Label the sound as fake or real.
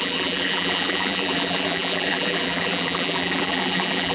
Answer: fake